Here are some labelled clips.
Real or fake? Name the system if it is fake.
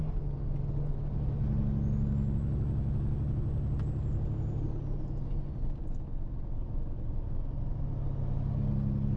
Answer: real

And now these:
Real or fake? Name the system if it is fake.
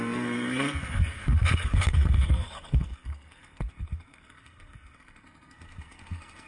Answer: fake, codec, SNAC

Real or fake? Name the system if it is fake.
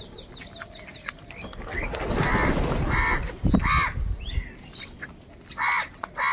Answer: real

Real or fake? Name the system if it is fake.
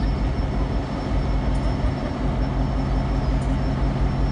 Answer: real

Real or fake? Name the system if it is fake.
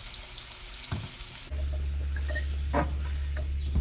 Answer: real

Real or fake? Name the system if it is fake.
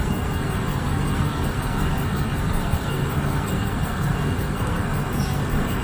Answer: fake, codec, SNAC